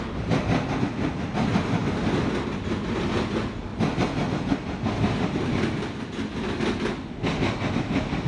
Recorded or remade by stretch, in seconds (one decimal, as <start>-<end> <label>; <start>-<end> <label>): 0.0-8.3 recorded